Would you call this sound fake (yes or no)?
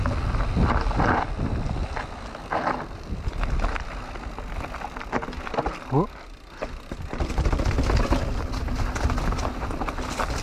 no